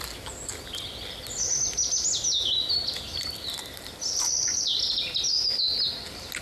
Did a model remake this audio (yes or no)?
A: no